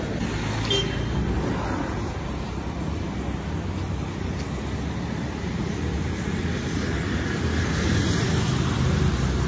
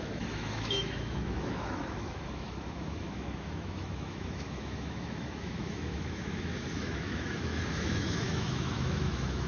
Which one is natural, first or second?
first